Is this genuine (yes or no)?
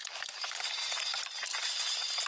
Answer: yes